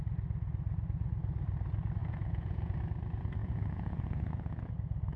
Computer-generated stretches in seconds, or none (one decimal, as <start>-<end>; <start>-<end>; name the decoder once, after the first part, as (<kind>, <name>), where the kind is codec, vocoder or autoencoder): 2.0-2.8 (vocoder, Vocos); 3.4-4.7